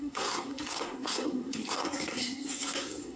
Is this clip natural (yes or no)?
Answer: no